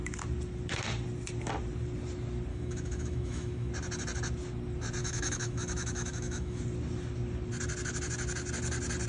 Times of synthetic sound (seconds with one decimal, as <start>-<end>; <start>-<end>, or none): 2.5-3.7; 5.0-6.6